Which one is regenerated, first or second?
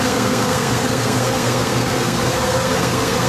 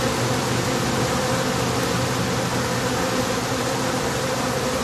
first